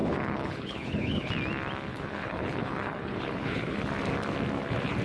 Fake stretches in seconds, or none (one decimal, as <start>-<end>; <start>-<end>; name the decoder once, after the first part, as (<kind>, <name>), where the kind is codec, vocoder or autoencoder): 0.0-1.3 (codec, HILCodec); 1.9-3.8